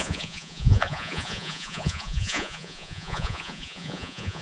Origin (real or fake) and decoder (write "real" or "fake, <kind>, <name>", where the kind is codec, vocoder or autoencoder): fake, vocoder, Vocos